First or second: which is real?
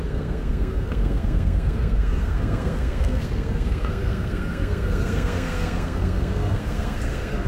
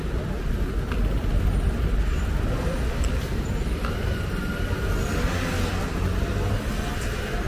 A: second